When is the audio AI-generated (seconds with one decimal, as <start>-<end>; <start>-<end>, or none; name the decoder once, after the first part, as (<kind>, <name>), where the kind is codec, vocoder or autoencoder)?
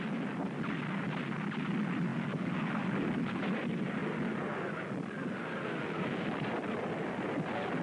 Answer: none